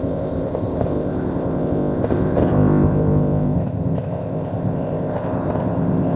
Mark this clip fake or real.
fake